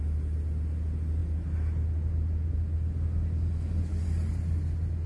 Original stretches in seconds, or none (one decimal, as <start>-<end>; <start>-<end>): 0.0-5.1